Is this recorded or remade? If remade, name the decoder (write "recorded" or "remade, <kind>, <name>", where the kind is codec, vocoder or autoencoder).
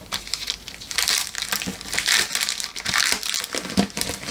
recorded